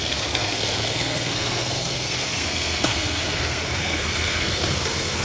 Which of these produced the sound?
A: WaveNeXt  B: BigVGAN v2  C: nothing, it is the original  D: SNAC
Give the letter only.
D